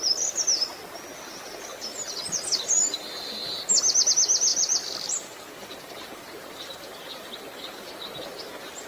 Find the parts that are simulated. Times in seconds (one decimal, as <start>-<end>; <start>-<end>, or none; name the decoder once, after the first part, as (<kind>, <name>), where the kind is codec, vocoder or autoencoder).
1.7-2.2 (vocoder, BigVGAN v2); 4.5-8.4